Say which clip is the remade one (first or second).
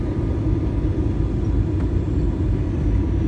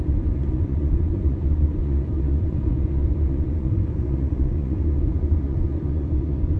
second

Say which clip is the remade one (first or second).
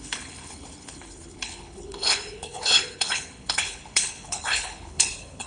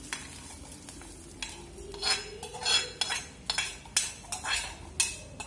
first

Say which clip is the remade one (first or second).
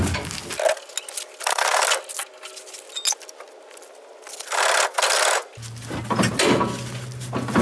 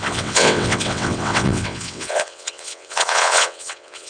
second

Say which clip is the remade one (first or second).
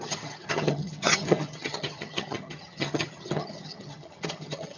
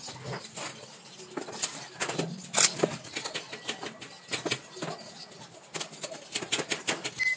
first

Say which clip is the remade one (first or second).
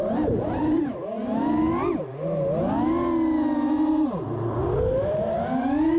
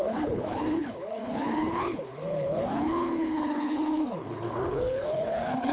second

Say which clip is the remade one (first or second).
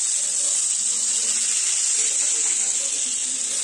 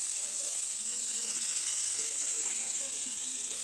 second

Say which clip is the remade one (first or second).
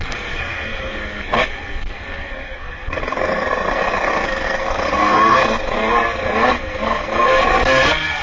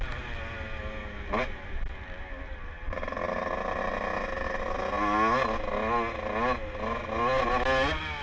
first